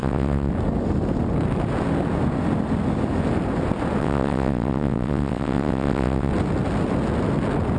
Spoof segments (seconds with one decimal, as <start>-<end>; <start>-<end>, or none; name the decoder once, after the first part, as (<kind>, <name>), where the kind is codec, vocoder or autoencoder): 0.0-0.5 (vocoder, WaveNeXt); 4.0-6.3